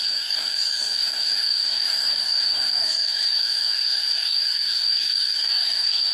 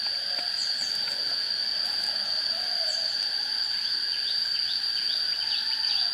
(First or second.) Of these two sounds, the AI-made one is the first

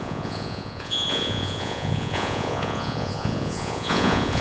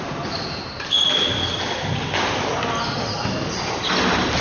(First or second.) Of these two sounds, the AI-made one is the first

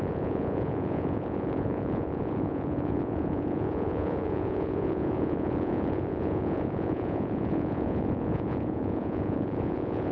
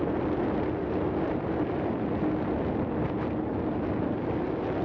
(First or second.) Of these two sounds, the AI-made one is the first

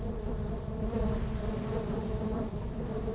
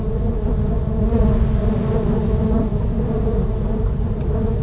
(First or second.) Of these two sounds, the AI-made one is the first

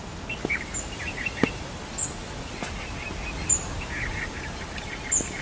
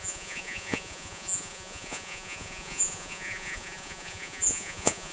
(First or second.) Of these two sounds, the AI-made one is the second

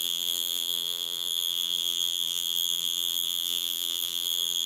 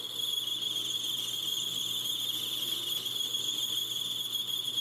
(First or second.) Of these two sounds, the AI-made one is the first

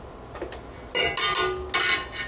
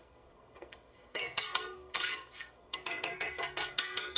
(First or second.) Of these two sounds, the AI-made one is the second